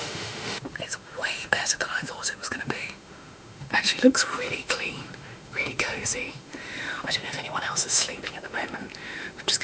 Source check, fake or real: fake